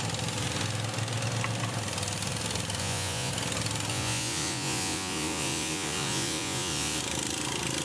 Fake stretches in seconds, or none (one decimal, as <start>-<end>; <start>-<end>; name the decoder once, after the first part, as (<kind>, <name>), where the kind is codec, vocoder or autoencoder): 2.8-3.3 (vocoder, Vocos); 3.9-7.0